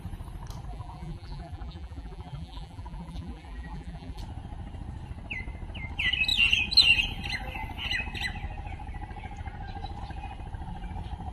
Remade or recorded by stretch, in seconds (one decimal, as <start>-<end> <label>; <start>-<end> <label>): 0.0-0.7 recorded; 0.7-4.2 remade; 4.2-11.3 recorded